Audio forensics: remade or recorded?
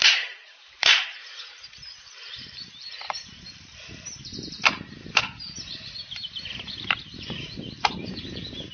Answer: remade